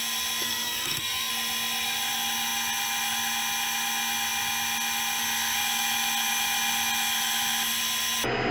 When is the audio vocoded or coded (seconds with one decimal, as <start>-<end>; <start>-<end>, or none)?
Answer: 0.4-1.3